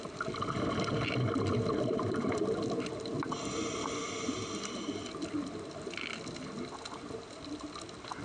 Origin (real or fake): real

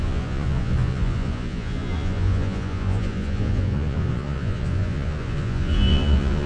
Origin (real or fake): fake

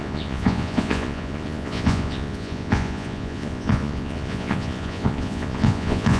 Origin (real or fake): fake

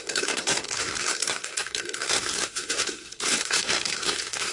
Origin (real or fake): fake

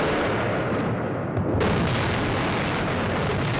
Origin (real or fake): real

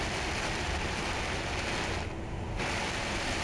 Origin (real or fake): real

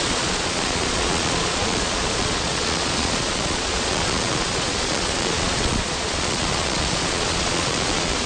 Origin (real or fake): fake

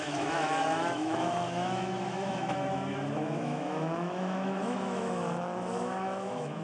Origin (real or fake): fake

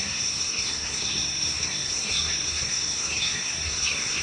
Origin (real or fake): fake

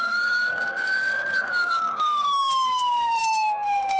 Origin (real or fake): fake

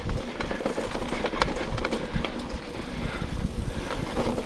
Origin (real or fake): real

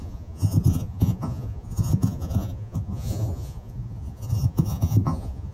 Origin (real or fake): fake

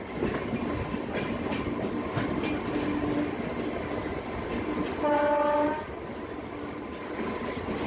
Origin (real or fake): real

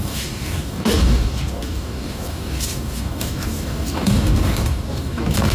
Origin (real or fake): fake